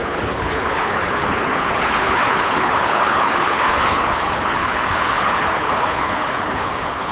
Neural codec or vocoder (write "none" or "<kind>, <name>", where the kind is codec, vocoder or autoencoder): codec, HILCodec